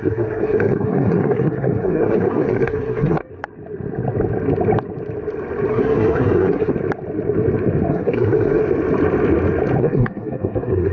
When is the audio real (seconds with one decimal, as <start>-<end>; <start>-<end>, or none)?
3.3-5.7; 6.7-7.9; 8.6-9.8